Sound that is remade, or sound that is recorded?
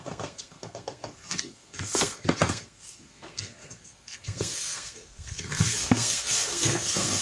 remade